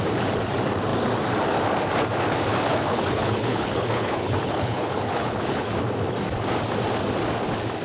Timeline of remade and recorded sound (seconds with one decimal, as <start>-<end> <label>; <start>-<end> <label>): 0.0-2.7 recorded; 2.7-5.7 remade; 5.7-7.8 recorded